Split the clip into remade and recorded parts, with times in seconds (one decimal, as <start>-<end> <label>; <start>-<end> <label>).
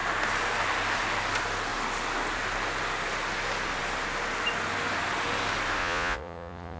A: 0.0-5.8 recorded; 5.8-6.8 remade